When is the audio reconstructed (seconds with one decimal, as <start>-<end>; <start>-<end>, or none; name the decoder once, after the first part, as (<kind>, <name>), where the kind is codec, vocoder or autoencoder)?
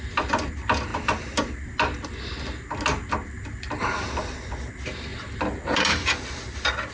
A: none